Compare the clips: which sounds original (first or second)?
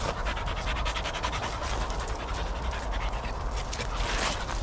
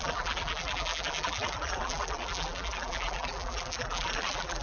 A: first